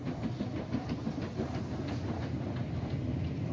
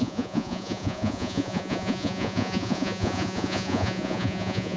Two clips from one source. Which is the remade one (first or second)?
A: second